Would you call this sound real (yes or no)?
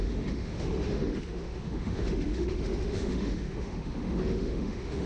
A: no